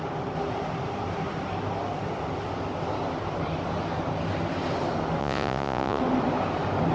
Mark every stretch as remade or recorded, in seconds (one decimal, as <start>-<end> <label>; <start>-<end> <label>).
0.0-5.2 recorded; 5.2-6.0 remade; 6.0-6.9 recorded